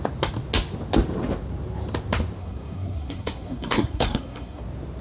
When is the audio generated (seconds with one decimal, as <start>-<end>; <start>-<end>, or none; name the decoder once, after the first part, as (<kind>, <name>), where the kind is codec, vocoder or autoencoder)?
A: 2.4-4.6 (codec, SNAC)